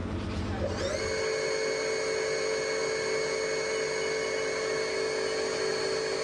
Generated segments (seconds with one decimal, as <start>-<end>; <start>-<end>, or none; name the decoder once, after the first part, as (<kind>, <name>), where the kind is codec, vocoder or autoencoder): 0.0-0.7 (vocoder, BigVGAN v2)

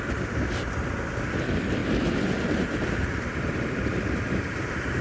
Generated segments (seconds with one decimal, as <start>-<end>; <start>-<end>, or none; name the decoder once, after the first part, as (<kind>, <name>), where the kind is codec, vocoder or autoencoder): 1.8-5.0 (vocoder, BigVGAN v2)

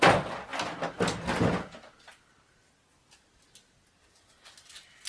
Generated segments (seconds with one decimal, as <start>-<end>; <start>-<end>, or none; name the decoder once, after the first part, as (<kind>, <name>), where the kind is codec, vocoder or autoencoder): none